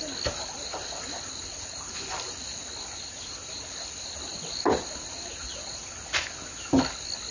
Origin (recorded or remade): recorded